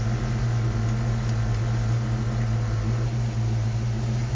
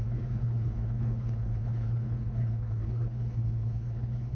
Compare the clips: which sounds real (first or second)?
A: first